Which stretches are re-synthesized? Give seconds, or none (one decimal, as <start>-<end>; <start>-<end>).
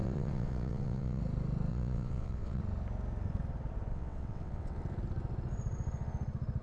0.0-1.2; 1.7-2.6; 3.9-4.8